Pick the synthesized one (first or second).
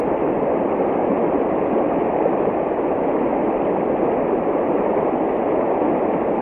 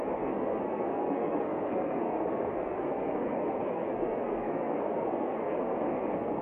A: second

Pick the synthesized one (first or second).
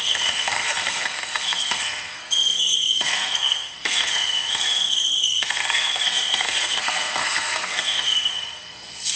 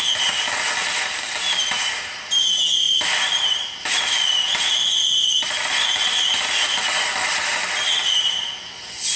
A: first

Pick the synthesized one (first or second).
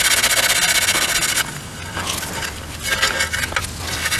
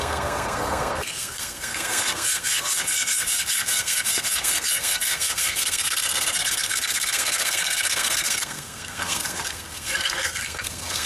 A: second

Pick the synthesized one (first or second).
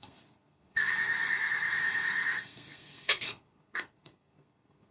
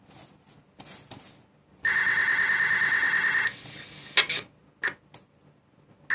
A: first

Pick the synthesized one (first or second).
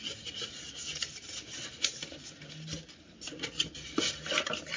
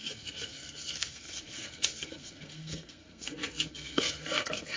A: second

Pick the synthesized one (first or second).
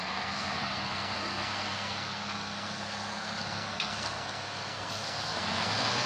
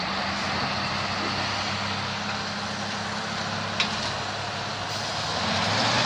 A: first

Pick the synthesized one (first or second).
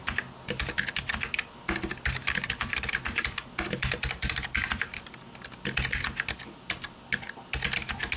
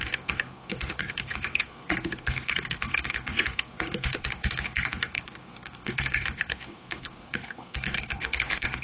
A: second